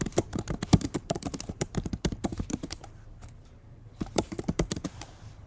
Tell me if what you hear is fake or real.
fake